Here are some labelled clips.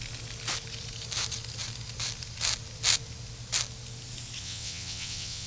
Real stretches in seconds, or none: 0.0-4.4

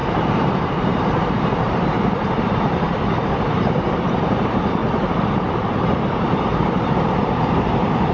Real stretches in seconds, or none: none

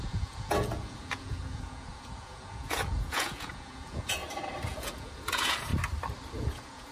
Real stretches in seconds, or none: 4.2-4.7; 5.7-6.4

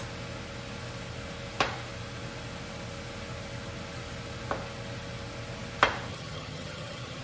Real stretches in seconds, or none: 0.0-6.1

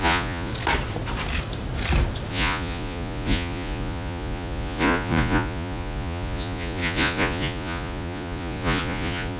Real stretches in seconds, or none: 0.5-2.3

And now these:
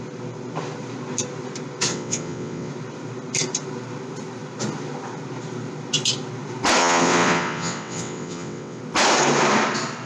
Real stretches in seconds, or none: 0.0-1.9; 2.7-6.8; 8.8-10.1

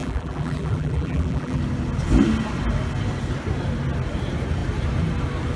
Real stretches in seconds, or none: 1.6-5.6

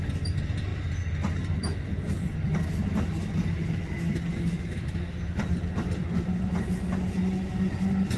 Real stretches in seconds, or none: 0.0-4.3; 5.1-8.2